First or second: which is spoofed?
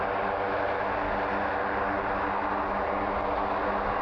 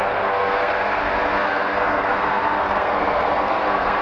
second